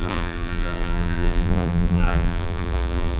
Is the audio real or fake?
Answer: fake